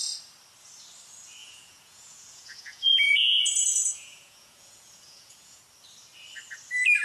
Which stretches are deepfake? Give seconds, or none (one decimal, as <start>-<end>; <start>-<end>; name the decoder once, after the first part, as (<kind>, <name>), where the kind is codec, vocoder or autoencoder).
1.4-5.6 (vocoder, Vocos)